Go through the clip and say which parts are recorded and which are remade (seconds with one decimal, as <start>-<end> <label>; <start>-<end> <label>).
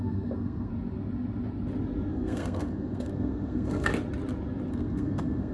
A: 0.0-0.7 remade; 0.7-2.1 recorded; 2.1-3.9 remade; 3.9-4.7 recorded; 4.7-5.5 remade